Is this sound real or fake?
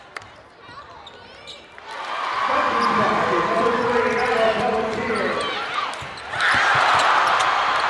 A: real